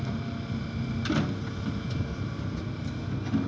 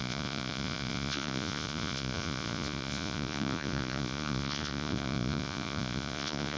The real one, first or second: first